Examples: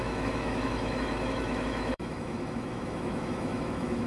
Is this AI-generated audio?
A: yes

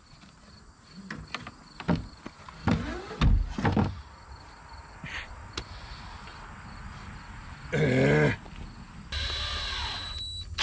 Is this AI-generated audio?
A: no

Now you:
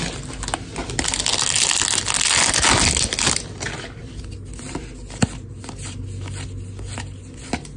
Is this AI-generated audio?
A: no